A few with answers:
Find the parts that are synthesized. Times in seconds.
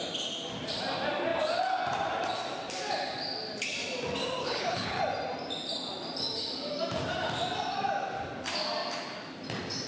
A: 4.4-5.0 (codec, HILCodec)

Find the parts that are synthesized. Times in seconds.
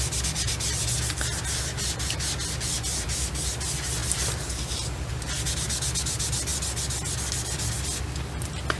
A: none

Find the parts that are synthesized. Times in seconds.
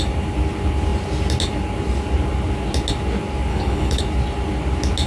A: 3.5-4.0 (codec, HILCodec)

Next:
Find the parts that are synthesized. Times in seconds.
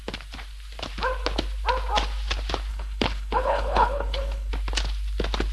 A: 2.7-4.5 (codec, HILCodec)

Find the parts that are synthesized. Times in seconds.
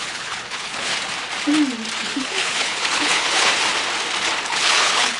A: 0.0-0.9 (codec, HILCodec); 2.0-3.5; 4.5-5.2